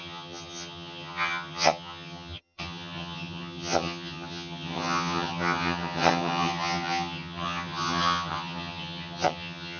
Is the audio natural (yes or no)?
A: no